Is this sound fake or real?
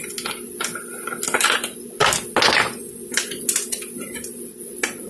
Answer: real